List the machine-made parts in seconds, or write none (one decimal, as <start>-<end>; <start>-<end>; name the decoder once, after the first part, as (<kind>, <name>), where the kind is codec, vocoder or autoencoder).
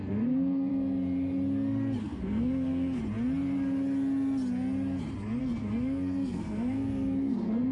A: 0.0-0.7 (codec, SNAC); 2.0-3.0; 5.4-7.7